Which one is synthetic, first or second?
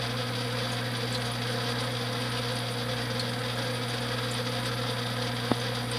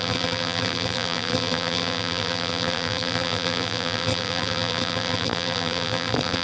second